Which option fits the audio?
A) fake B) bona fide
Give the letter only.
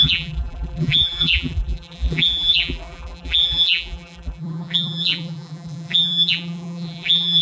A